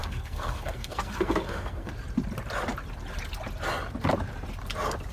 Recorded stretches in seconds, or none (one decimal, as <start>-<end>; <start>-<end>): 1.9-5.1